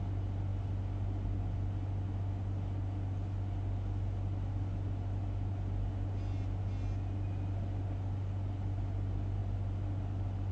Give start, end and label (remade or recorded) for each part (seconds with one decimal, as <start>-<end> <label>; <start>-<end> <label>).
0.0-10.5 recorded